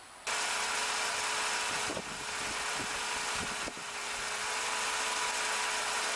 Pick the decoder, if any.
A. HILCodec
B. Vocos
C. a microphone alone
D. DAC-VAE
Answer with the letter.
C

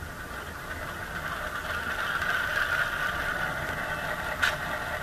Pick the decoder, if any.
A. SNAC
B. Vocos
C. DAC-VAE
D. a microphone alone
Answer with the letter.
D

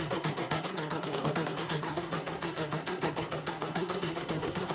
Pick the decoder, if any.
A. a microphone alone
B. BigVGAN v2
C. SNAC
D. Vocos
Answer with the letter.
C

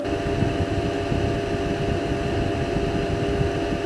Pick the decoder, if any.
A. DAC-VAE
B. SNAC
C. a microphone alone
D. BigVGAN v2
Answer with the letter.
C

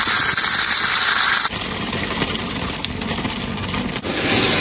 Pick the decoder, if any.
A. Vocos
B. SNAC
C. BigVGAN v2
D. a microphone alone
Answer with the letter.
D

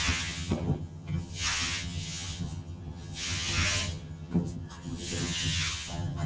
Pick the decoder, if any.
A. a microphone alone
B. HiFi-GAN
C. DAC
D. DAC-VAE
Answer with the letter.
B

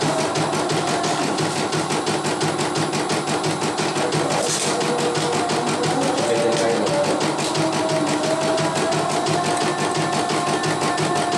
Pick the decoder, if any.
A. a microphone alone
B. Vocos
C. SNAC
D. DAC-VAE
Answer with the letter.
A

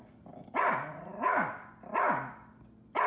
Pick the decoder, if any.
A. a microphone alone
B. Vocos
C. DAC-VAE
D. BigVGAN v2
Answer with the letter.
A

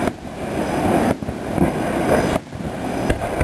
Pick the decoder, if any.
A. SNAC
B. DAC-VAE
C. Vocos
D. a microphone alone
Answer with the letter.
D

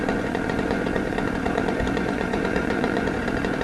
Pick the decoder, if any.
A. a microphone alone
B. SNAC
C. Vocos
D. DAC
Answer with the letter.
C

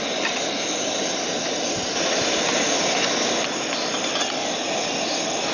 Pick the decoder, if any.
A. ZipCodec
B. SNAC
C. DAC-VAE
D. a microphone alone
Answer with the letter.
D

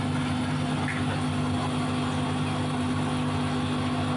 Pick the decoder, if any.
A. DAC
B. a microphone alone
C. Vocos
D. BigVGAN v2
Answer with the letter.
B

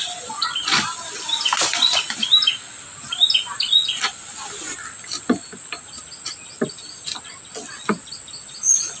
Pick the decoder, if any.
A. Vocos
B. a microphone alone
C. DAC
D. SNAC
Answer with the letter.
B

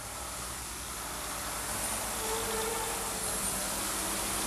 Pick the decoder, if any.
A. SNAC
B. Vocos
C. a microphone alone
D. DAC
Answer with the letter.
C